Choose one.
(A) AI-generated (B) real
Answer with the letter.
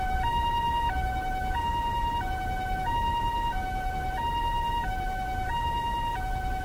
B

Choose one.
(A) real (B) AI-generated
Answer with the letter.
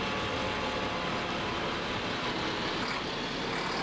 A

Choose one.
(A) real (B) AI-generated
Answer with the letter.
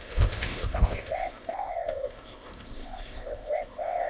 B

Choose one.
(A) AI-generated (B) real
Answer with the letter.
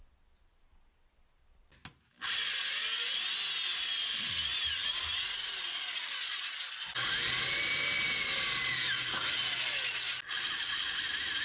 B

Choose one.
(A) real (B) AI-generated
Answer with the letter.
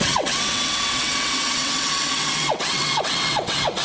B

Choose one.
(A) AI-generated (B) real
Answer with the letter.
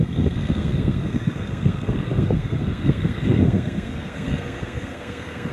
A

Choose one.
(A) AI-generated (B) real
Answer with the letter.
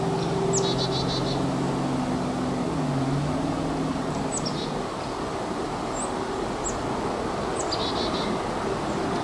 B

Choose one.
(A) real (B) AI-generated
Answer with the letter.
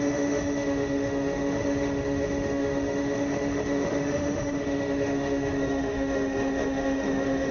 B